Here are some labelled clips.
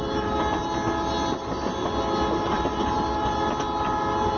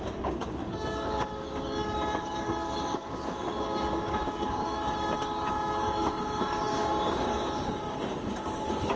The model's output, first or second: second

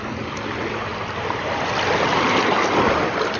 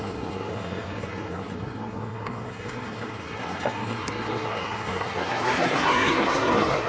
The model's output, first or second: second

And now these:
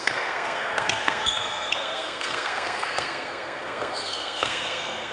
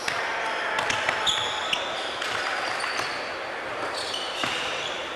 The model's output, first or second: first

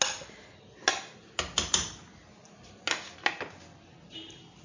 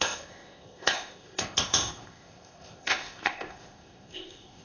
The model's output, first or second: second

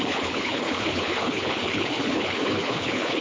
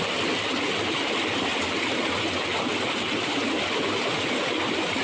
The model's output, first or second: first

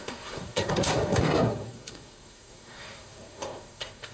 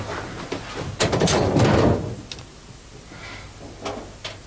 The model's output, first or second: first